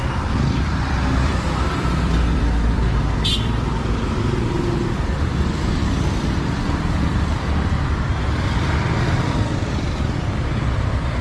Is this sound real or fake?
fake